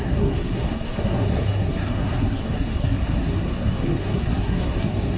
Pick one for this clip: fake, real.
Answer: fake